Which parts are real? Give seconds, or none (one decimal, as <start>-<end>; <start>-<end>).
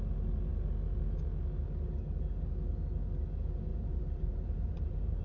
0.0-3.7